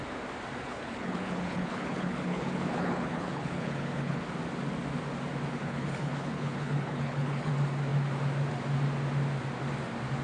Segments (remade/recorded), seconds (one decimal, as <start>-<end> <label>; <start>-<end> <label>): 0.0-0.7 recorded; 0.7-4.2 remade; 4.2-5.6 recorded; 5.6-7.5 remade; 7.5-10.2 recorded